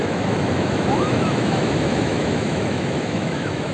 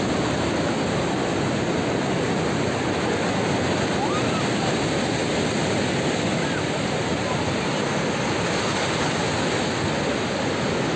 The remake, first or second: first